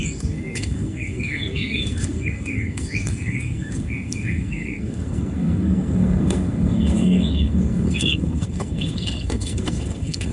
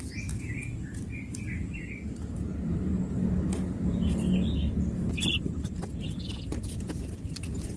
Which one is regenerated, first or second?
first